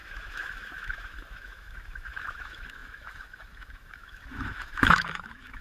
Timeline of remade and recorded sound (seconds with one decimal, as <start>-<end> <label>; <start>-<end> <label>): 0.0-5.6 remade